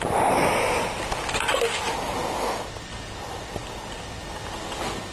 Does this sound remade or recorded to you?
recorded